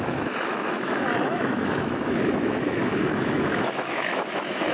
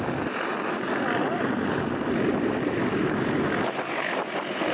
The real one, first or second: second